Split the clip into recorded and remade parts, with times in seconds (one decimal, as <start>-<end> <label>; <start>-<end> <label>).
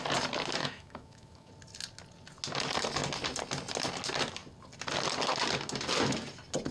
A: 0.0-0.6 recorded; 0.6-1.5 remade; 1.5-6.7 recorded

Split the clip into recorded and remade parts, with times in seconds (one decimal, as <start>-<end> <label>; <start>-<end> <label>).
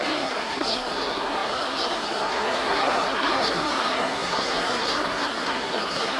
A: 0.0-6.2 remade